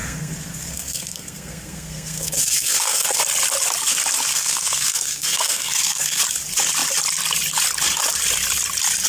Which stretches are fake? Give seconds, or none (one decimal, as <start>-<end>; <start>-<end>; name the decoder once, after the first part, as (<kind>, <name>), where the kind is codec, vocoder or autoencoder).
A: 0.0-3.2 (codec, SNAC); 4.3-6.2